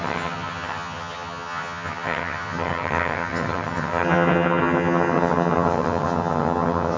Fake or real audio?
fake